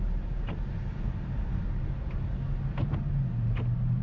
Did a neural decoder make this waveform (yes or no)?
no